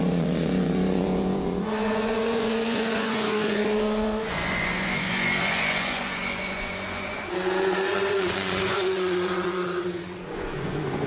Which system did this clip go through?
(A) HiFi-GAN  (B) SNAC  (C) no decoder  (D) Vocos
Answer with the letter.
D